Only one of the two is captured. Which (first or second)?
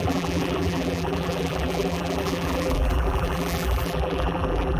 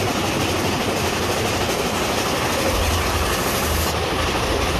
second